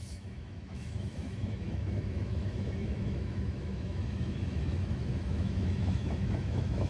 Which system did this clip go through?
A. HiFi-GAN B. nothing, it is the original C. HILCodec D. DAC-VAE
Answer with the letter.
D